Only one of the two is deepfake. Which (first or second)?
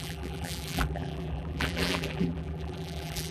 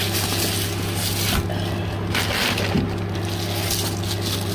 first